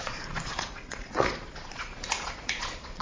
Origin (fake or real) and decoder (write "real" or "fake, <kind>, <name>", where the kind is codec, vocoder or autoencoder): fake, vocoder, Vocos